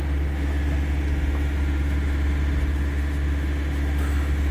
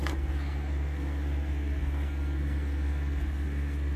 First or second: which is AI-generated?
second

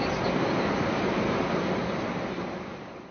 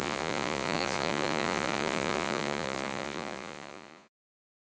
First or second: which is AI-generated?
second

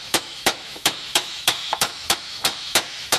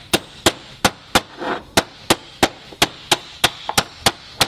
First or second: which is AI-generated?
first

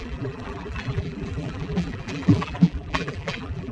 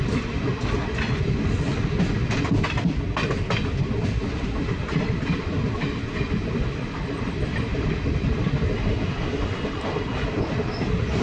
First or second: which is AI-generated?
first